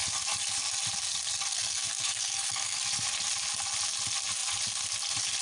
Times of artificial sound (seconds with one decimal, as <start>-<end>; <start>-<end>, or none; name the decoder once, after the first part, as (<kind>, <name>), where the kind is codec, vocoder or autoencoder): 1.5-2.8 (codec, SNAC)